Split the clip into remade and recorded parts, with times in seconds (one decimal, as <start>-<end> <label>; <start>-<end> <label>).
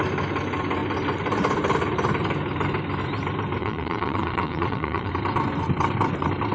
0.0-3.6 recorded; 3.6-5.1 remade; 5.1-6.5 recorded